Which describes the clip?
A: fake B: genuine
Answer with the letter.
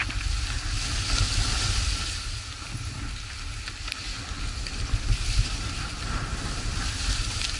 B